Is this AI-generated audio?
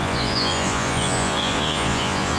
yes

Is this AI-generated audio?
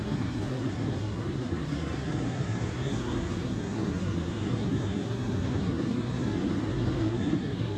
yes